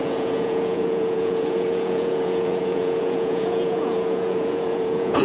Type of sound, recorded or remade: remade